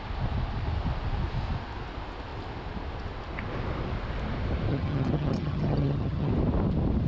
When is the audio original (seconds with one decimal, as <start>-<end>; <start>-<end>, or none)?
0.0-4.7; 6.3-7.1